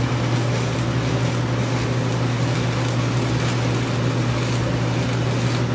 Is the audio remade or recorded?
recorded